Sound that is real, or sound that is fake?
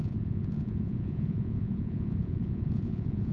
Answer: fake